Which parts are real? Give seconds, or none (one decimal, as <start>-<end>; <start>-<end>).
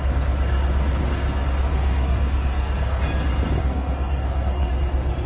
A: 0.0-1.7; 3.0-3.6; 4.7-5.3